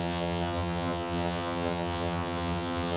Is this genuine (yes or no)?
no